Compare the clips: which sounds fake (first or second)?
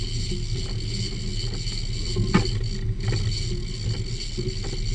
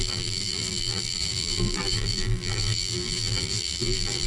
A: second